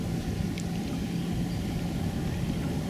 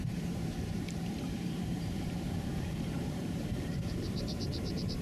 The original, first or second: first